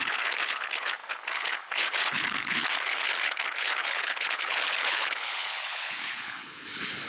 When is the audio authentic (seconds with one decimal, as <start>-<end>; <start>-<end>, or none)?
none